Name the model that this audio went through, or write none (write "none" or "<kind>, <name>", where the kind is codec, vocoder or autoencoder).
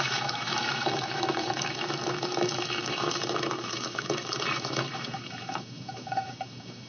autoencoder, DAC-VAE